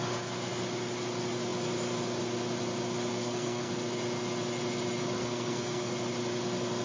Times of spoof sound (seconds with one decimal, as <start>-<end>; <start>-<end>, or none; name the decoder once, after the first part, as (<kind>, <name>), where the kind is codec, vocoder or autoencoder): 3.1-3.7 (codec, SNAC); 5.2-5.9